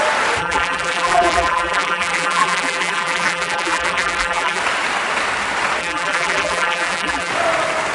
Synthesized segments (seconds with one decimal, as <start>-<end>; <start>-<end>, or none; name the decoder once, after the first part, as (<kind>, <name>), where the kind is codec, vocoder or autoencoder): 0.4-4.6 (vocoder, BigVGAN v2); 5.8-7.3